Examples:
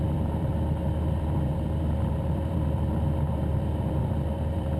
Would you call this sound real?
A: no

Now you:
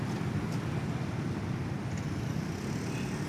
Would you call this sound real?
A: yes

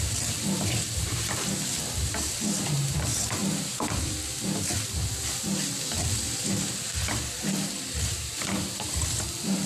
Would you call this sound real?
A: no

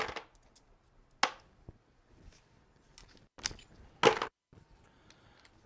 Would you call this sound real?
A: yes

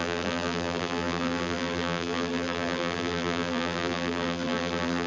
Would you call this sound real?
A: no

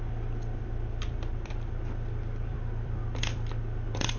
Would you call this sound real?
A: no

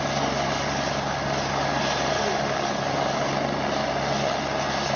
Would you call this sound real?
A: yes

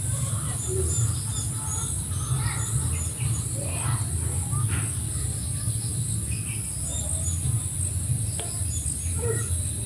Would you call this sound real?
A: yes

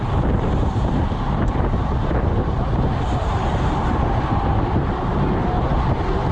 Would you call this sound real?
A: no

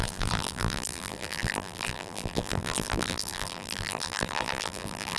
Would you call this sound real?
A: no